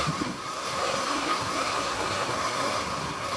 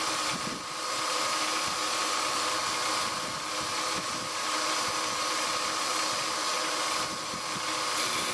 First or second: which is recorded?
second